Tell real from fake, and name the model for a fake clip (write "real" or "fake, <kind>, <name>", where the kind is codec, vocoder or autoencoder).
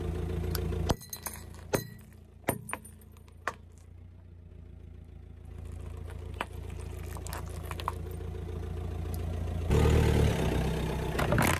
real